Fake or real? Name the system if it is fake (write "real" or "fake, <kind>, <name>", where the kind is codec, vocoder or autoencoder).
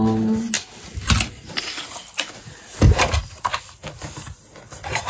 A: real